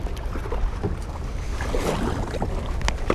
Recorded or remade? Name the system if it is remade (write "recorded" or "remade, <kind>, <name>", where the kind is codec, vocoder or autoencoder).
recorded